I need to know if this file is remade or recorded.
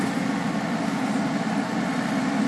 recorded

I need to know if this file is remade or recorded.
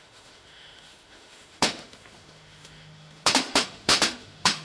remade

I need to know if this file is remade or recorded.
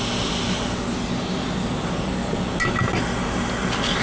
recorded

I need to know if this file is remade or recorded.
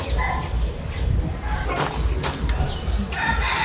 recorded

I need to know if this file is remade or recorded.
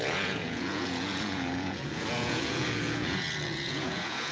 remade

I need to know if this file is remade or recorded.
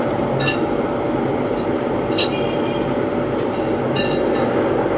recorded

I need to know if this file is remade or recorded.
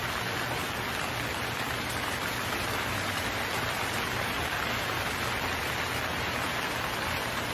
recorded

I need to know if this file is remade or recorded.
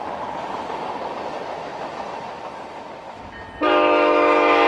recorded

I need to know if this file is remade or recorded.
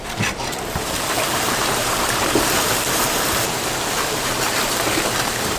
remade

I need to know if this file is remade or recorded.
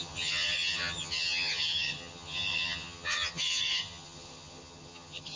remade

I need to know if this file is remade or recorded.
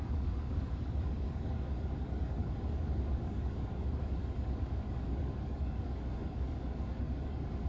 remade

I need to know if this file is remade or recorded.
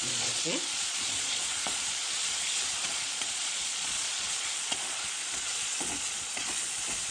remade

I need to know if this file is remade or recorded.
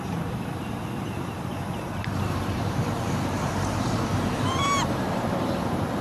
remade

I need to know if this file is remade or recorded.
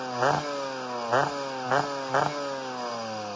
recorded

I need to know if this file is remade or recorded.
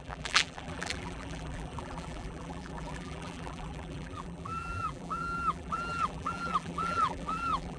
remade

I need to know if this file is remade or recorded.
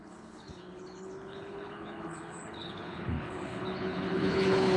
remade